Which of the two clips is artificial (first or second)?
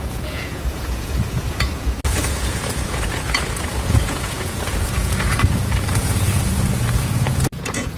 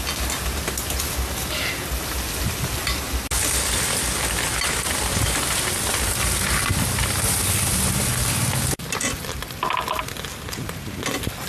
first